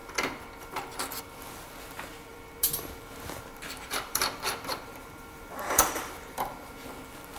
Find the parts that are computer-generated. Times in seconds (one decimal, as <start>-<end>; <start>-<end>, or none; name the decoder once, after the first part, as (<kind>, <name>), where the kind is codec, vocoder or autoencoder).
2.3-6.7 (vocoder, BigVGAN v2)